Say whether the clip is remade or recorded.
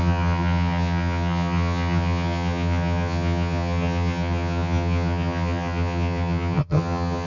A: remade